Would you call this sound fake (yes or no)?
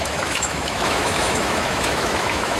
yes